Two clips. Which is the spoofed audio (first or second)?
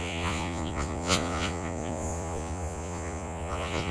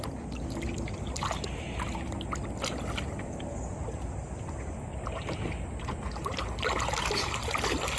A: first